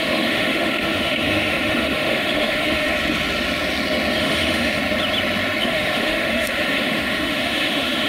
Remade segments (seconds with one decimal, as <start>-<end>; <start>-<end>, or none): 0.0-2.9; 4.2-4.8; 5.6-8.1